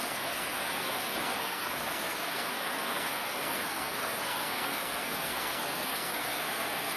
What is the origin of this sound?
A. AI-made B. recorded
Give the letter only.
A